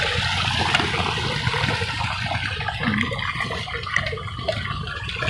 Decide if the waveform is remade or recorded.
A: recorded